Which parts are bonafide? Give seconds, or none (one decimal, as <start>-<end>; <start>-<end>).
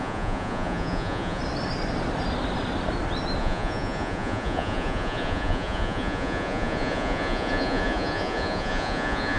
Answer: 1.4-3.4